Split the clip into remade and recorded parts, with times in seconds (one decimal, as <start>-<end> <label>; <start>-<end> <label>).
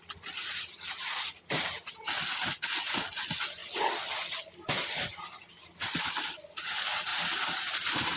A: 0.0-3.6 recorded; 3.6-6.2 remade; 6.2-8.2 recorded